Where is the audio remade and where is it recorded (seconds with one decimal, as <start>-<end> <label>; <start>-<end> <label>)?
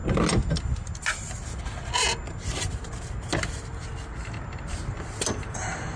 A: 0.0-6.0 recorded